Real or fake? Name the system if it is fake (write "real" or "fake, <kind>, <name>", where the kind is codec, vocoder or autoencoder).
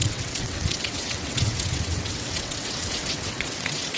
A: fake, vocoder, WaveNeXt